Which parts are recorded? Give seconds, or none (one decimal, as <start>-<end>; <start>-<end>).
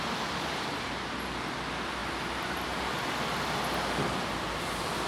0.0-5.1